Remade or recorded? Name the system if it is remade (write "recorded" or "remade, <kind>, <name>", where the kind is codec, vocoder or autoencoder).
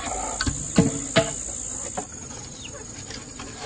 recorded